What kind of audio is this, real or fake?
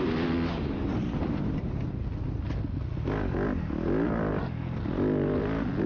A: real